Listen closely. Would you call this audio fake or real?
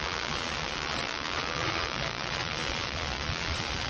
fake